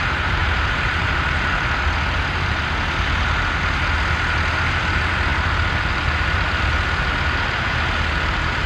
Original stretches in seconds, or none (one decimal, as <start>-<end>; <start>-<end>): 0.0-0.4; 2.7-5.3; 5.9-8.7